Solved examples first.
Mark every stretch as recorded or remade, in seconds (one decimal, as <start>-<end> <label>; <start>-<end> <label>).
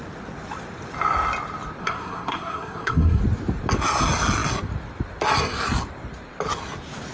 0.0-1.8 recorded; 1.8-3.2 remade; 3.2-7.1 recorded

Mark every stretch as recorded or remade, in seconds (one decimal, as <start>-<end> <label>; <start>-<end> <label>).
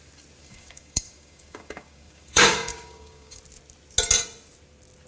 0.0-0.4 recorded; 0.4-3.4 remade; 3.4-5.1 recorded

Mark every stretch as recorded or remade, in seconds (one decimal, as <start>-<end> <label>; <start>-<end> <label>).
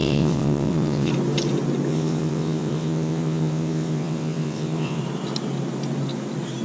0.0-1.1 remade; 1.1-1.9 recorded; 1.9-5.0 remade; 5.0-6.6 recorded